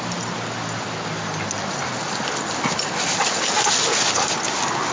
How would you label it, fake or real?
real